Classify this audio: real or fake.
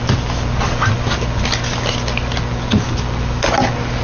real